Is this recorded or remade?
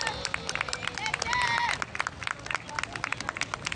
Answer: recorded